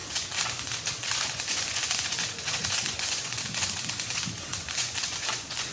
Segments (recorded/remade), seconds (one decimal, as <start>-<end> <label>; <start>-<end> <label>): 0.0-5.7 remade